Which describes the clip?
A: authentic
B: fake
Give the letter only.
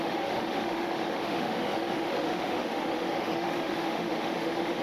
B